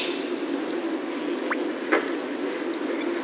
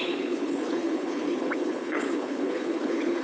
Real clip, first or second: first